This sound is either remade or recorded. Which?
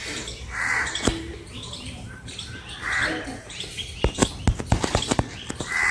recorded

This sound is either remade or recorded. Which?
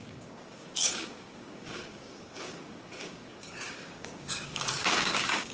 remade